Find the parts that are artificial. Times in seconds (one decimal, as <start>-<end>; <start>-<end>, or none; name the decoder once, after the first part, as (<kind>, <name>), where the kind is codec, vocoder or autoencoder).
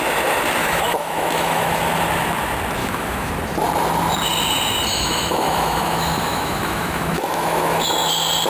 0.6-1.8 (autoencoder, DAC-VAE); 2.8-3.3; 4.9-7.9